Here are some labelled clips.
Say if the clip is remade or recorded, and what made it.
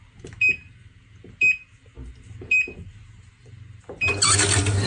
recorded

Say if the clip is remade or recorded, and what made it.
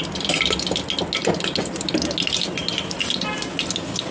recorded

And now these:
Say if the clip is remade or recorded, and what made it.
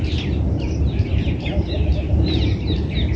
recorded